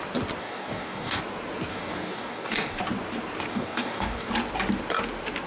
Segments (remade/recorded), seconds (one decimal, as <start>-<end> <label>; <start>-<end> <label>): 0.0-0.4 recorded; 0.4-1.2 remade; 1.2-1.7 recorded; 1.7-2.8 remade; 2.8-3.5 recorded; 3.5-4.3 remade; 4.3-5.5 recorded